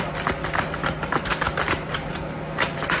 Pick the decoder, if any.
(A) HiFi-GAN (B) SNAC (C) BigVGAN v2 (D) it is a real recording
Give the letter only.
D